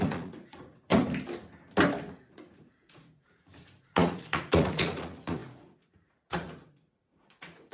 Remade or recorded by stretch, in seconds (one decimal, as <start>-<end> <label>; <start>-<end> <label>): 0.0-0.9 remade; 0.9-2.1 recorded; 2.1-7.7 remade